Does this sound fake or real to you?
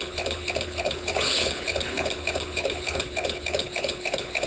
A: fake